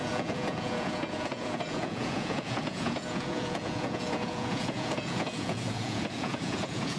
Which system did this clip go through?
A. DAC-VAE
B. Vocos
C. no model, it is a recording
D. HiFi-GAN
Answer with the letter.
B